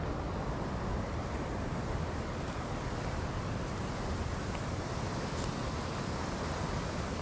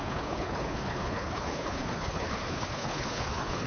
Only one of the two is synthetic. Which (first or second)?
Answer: second